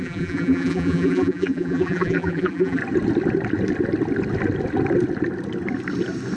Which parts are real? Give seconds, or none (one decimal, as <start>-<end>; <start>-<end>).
2.8-6.4

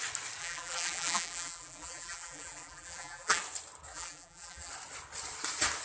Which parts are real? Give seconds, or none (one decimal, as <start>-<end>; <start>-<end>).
0.0-0.4; 3.4-3.9; 4.7-5.8

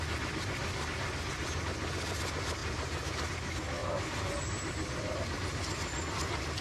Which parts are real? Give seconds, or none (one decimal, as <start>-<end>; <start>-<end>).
0.0-2.6; 3.3-3.8; 5.3-6.6

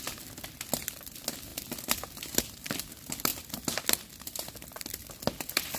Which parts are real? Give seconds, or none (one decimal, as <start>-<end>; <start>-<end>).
0.0-5.8

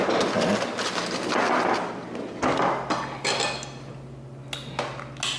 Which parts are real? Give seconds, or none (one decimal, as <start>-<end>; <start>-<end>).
0.0-5.4